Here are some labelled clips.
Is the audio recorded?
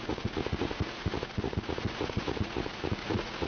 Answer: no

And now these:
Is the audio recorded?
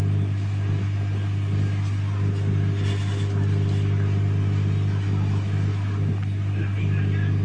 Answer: yes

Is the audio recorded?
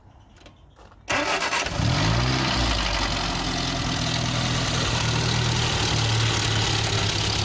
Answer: yes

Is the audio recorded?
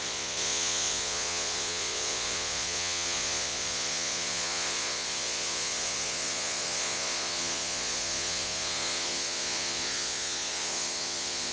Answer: no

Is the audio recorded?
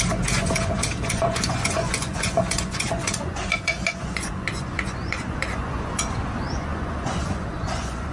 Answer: no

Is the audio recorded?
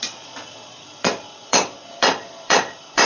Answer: no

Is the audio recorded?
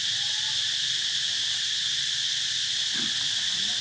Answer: yes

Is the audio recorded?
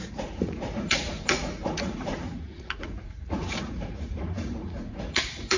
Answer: no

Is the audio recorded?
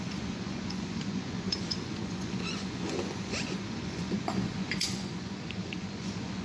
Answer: no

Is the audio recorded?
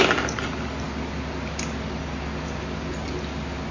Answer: yes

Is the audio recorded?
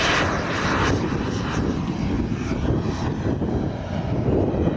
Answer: yes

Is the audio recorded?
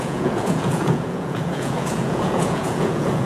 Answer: no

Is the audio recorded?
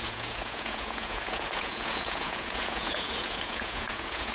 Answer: no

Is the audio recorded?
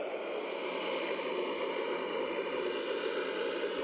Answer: yes